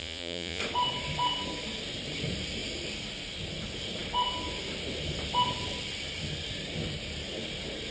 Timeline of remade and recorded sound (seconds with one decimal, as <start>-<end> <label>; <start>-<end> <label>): 0.0-0.6 remade; 0.6-7.9 recorded